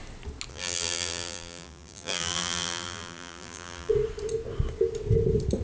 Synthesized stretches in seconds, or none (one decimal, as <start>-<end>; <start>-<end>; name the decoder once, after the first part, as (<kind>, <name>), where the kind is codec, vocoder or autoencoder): 0.5-3.9 (vocoder, BigVGAN v2)